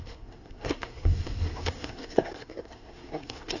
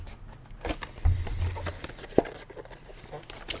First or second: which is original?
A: second